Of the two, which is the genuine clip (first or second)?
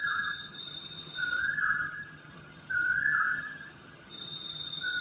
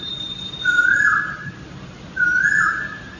second